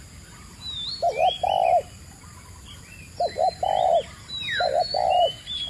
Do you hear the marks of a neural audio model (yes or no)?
no